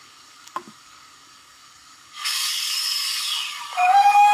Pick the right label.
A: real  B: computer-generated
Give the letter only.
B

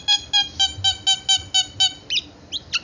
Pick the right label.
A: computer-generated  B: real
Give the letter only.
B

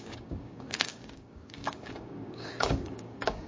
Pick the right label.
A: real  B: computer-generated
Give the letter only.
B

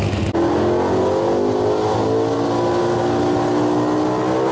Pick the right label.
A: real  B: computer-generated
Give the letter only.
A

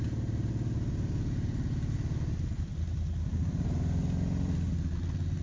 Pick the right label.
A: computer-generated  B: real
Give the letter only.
B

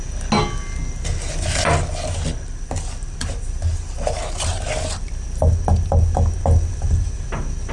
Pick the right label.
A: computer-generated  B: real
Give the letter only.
B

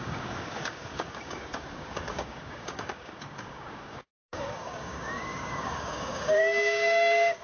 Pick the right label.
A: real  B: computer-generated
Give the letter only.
B